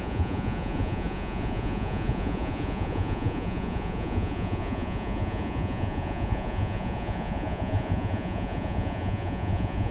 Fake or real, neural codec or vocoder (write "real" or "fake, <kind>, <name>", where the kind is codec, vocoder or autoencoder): fake, vocoder, Vocos